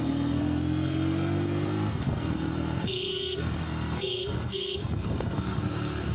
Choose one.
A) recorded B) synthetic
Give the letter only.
B